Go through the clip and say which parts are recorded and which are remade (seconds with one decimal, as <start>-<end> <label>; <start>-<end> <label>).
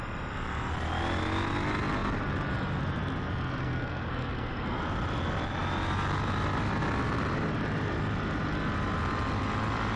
0.0-3.6 recorded; 3.6-4.8 remade; 4.8-10.0 recorded